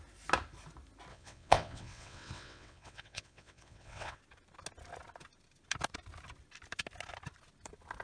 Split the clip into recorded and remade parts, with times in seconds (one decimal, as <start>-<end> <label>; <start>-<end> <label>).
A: 0.0-1.1 recorded; 1.1-4.2 remade; 4.2-8.0 recorded

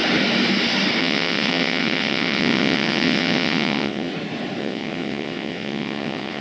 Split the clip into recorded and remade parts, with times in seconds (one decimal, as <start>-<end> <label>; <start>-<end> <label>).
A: 0.0-1.0 recorded; 1.0-4.1 remade; 4.1-4.6 recorded; 4.6-6.4 remade

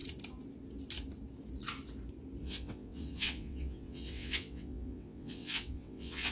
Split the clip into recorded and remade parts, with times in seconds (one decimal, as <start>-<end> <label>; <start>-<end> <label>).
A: 0.0-2.4 recorded; 2.4-6.3 remade

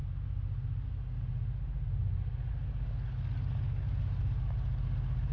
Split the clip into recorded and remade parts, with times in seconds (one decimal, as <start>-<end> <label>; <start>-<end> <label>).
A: 0.0-5.3 recorded

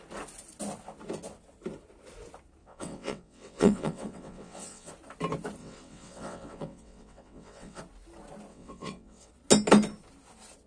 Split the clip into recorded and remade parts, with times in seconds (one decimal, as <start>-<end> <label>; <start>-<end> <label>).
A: 0.0-2.6 recorded; 2.6-4.9 remade; 4.9-5.6 recorded; 5.6-7.8 remade; 7.8-8.5 recorded; 8.5-9.3 remade; 9.3-10.7 recorded

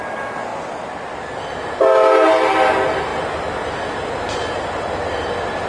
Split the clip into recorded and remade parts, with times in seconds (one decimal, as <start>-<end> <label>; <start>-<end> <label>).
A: 0.0-5.7 recorded